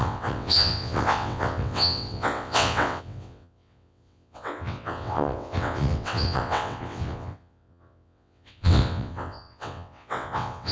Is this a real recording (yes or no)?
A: no